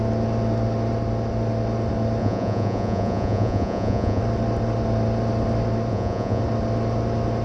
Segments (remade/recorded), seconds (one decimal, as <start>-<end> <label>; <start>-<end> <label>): 0.0-2.2 recorded; 2.2-4.2 remade; 4.2-5.9 recorded; 5.9-6.4 remade; 6.4-7.4 recorded